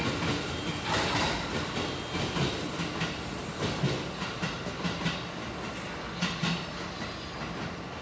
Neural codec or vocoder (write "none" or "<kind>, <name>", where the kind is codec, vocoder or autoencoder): none